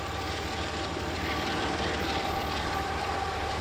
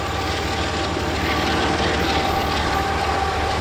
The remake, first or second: first